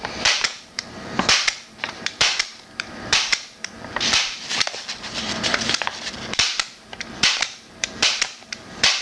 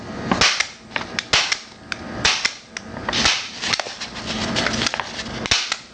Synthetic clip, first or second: first